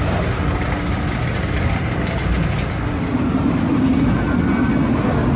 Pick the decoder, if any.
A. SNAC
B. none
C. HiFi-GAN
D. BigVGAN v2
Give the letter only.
B